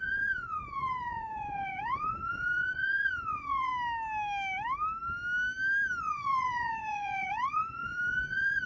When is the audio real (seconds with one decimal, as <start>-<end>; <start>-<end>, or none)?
3.7-6.0